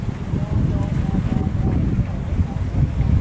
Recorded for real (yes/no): yes